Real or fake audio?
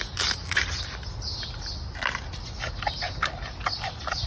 real